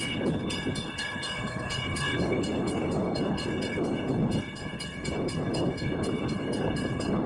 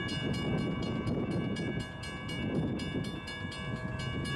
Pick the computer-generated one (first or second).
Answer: first